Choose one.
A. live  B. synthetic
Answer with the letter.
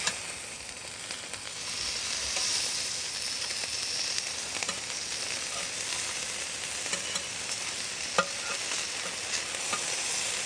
A